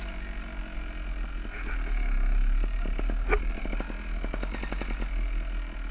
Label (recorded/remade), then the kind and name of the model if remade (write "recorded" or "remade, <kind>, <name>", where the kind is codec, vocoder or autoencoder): recorded